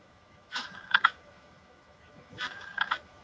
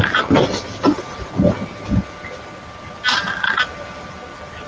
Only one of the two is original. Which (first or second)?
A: second